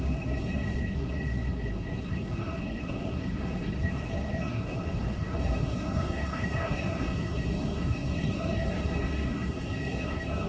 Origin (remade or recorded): remade